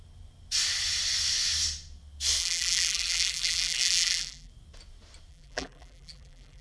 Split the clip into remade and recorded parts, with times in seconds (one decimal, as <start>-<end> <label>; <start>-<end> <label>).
0.0-2.4 recorded; 2.4-4.5 remade; 4.5-5.3 recorded; 5.3-6.6 remade